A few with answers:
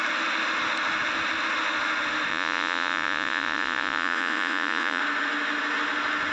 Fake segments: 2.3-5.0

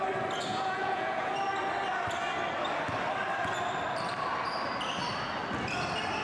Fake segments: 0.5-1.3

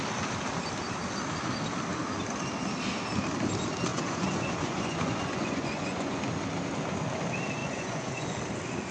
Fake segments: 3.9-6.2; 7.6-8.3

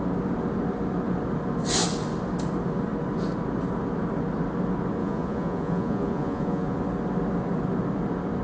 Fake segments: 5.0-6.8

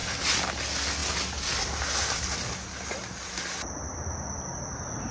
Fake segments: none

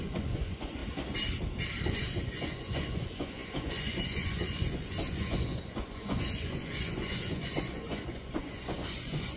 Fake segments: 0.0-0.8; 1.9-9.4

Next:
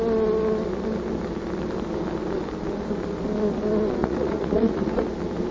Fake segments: 4.0-5.1

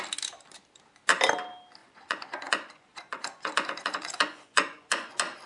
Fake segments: 1.8-5.1